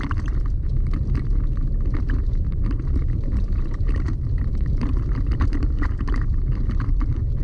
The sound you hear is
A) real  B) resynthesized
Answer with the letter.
B